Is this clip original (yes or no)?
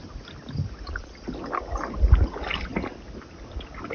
yes